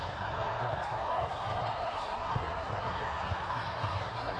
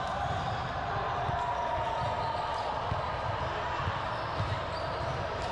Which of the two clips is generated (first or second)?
first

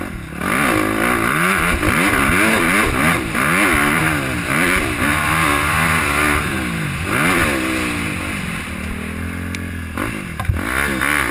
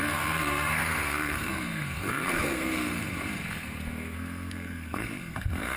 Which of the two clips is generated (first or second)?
second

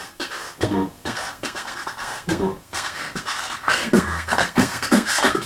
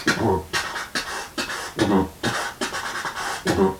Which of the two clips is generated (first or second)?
first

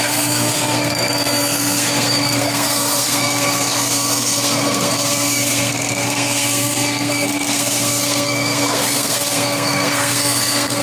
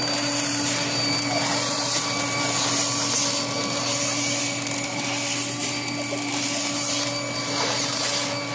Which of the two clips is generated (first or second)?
first